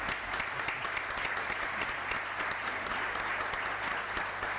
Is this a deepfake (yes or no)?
no